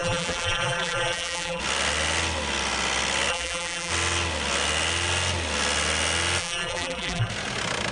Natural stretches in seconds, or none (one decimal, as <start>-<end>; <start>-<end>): 1.6-3.3; 3.9-6.4; 7.3-7.9

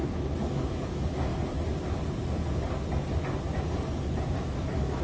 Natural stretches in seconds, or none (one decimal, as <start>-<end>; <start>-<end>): 1.3-4.3

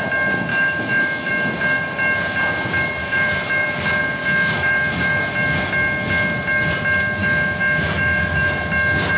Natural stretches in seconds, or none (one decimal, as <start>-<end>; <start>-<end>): 0.0-0.5; 1.3-3.0; 3.7-4.2; 5.3-7.2; 8.5-9.2

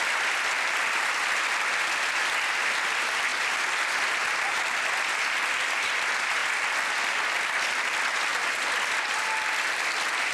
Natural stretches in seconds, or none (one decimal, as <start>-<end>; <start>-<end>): 0.0-10.3

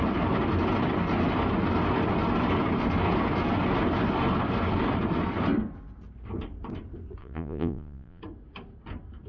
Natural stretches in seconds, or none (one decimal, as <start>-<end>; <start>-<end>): 0.0-7.2; 8.2-9.3